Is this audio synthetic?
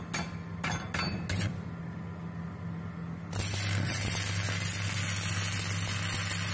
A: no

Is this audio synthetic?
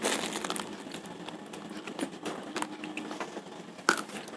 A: no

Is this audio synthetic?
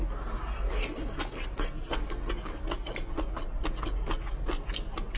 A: no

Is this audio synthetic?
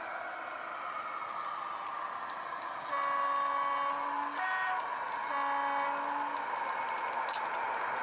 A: no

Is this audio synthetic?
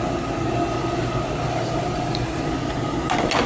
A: no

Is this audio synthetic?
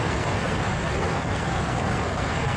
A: yes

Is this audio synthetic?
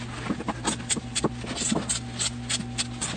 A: no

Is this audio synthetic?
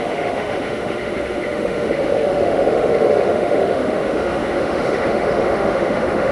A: yes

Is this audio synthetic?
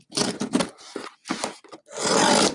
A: no